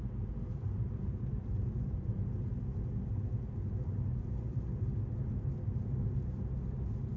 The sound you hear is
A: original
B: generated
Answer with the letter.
A